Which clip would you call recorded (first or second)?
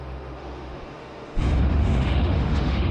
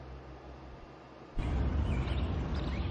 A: second